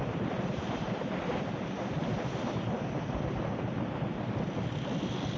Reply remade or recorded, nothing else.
recorded